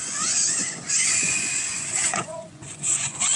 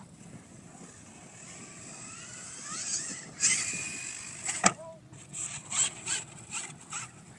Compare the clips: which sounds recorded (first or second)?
second